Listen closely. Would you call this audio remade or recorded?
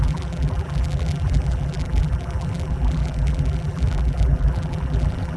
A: remade